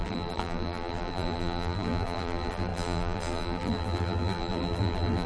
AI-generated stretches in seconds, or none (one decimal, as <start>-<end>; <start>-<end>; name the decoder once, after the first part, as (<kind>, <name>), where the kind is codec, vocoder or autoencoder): 0.0-5.3 (vocoder, BigVGAN v2)